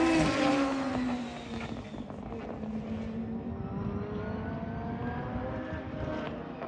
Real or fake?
real